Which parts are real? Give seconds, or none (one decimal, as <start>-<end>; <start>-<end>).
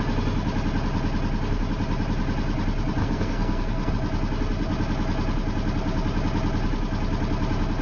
0.0-3.0; 3.9-7.8